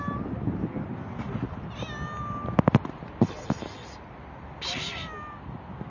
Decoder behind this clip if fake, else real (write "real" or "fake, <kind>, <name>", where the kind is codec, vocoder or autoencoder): real